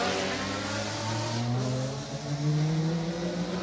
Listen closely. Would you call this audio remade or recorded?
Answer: recorded